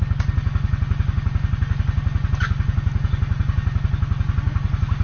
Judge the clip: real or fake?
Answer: real